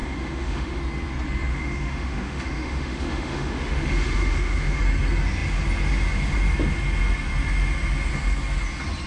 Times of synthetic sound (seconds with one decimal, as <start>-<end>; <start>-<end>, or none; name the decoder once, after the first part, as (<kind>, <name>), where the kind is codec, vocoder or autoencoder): 0.0-0.8 (autoencoder, DAC-VAE); 1.5-4.8